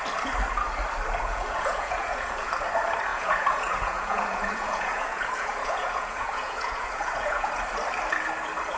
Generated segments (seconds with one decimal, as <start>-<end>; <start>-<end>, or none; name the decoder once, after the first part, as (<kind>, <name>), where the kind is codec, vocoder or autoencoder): 1.2-2.5 (vocoder, Vocos); 3.1-7.6